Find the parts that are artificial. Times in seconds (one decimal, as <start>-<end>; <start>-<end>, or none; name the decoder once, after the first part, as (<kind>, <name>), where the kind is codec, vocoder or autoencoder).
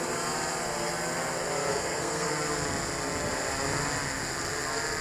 1.7-2.3 (codec, SNAC)